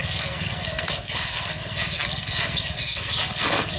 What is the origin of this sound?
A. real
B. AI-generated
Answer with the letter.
B